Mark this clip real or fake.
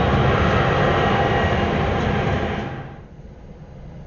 real